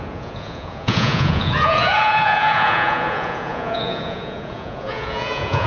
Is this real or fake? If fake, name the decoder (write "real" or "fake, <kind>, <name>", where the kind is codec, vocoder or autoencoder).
fake, vocoder, Vocos